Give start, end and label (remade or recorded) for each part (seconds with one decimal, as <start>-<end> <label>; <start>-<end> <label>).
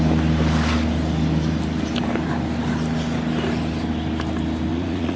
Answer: 0.0-4.7 recorded; 4.7-5.2 remade